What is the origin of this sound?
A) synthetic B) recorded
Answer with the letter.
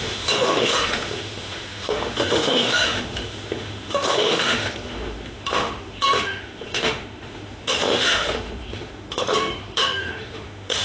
A